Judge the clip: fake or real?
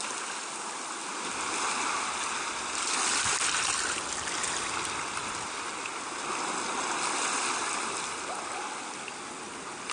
real